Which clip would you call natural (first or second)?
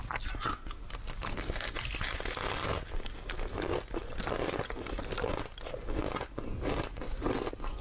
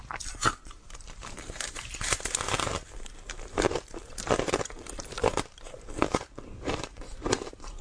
first